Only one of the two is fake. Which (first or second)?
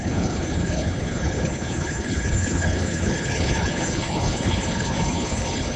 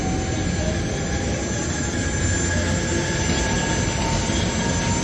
first